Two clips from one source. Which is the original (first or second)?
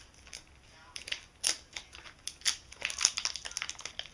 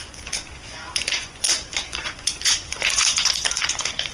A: first